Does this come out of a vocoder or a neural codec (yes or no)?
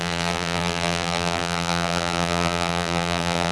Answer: yes